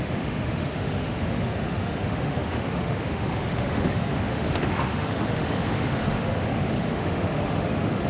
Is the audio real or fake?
fake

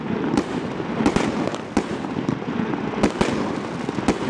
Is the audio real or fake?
real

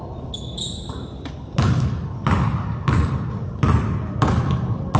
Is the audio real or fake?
real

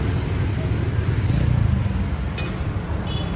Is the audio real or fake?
real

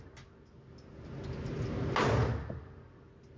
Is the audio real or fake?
real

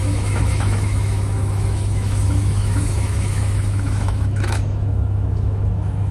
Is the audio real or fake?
fake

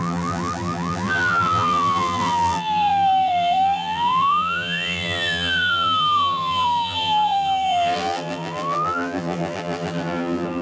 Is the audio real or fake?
fake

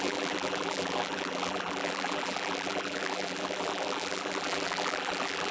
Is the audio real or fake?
fake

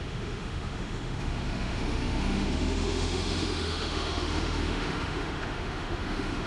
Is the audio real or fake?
fake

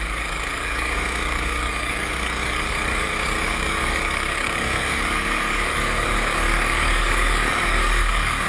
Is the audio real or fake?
fake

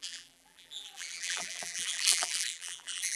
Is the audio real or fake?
fake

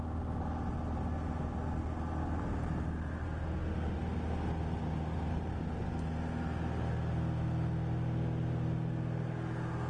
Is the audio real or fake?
real